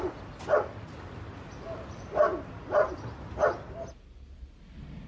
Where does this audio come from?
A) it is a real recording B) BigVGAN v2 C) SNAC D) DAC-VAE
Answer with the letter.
A